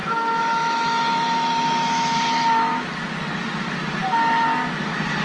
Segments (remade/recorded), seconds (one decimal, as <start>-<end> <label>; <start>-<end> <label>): 0.0-3.1 remade; 3.1-5.2 recorded